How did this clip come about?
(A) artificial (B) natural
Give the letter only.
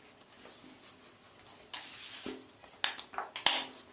B